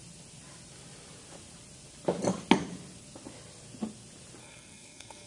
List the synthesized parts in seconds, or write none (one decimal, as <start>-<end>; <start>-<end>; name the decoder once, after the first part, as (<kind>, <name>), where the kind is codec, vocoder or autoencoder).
4.4-5.3 (codec, SNAC)

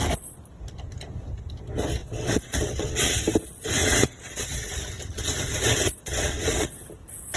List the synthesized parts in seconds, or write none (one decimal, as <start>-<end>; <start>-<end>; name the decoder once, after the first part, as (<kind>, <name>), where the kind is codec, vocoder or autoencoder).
2.0-3.2 (vocoder, WaveNeXt); 3.8-4.7; 6.0-6.7